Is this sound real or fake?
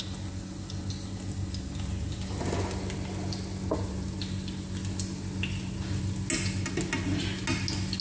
real